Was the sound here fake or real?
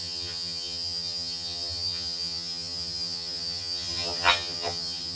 fake